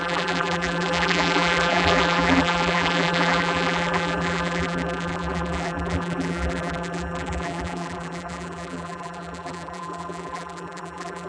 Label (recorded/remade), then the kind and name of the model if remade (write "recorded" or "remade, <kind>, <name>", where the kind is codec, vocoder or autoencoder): remade, vocoder, BigVGAN v2